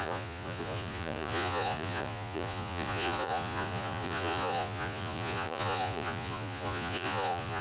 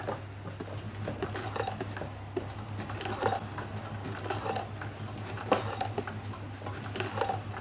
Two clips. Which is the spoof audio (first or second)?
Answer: first